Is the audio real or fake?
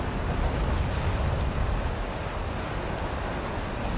real